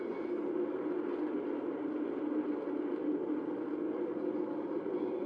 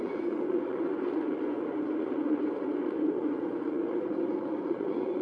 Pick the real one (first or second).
first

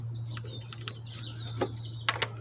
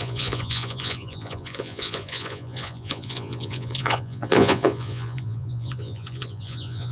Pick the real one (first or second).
first